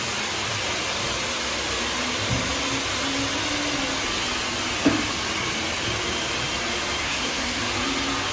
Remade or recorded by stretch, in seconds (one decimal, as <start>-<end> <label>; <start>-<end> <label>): 0.0-7.0 recorded; 7.0-7.6 remade; 7.6-8.3 recorded